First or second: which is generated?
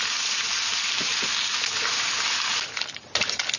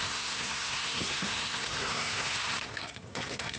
second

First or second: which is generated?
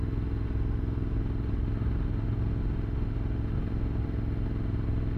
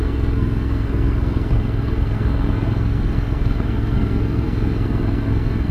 second